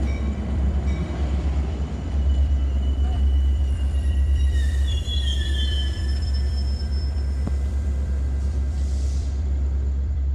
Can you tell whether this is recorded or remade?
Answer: remade